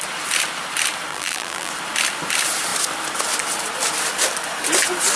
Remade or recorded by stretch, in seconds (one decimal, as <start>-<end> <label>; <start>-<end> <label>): 0.0-1.1 recorded; 1.1-1.7 remade; 1.7-5.2 recorded